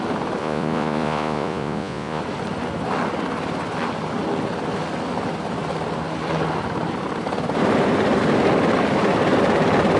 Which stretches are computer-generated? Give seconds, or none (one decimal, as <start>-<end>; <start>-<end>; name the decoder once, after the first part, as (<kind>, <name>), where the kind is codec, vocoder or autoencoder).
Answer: 0.4-2.2 (vocoder, Vocos)